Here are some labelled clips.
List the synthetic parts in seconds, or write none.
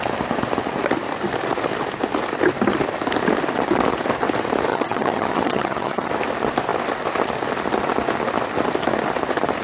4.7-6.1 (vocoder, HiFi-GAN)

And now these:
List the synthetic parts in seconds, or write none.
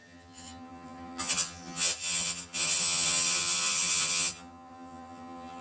0.0-5.6 (vocoder, HiFi-GAN)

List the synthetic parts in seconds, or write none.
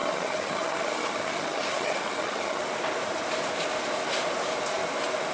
0.0-2.6 (vocoder, HiFi-GAN)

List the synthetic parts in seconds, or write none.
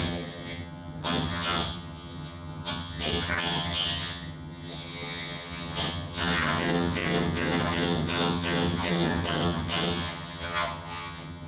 0.0-11.5 (vocoder, HiFi-GAN)